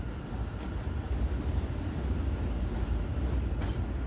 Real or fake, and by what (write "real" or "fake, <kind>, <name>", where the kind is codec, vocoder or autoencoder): real